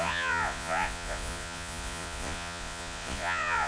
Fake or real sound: fake